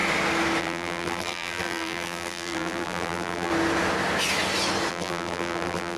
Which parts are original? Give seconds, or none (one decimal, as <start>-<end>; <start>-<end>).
0.0-0.6; 3.5-4.9